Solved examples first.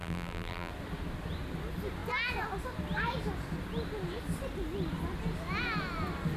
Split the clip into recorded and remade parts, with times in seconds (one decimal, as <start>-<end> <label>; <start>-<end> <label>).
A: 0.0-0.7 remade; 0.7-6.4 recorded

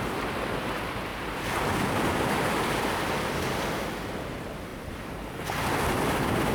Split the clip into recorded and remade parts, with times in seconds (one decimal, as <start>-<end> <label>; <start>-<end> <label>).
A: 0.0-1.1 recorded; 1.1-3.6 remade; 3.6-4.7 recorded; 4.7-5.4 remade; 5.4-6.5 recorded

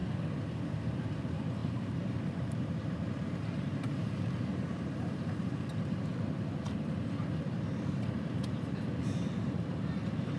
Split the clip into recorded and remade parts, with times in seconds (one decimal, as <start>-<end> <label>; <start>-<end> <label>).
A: 0.0-1.0 recorded; 1.0-10.4 remade

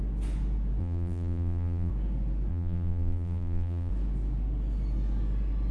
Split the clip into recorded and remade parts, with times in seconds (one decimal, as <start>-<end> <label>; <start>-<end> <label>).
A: 0.0-0.8 recorded; 0.8-1.9 remade; 1.9-2.5 recorded; 2.5-3.9 remade; 3.9-5.7 recorded

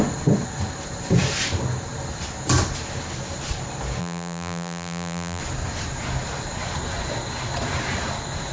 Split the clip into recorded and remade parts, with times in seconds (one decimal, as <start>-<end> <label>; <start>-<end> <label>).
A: 0.0-4.0 recorded; 4.0-5.4 remade; 5.4-8.5 recorded

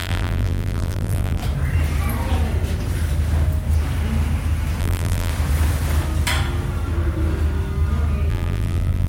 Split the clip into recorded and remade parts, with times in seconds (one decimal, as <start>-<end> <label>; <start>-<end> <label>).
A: 0.0-1.4 remade; 1.4-4.8 recorded; 4.8-5.3 remade; 5.3-8.3 recorded; 8.3-9.1 remade